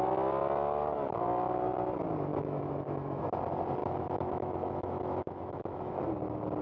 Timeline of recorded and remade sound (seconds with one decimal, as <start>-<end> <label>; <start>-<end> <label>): 0.0-2.3 recorded; 2.3-3.2 remade; 3.2-3.8 recorded; 3.8-6.0 remade; 6.0-6.6 recorded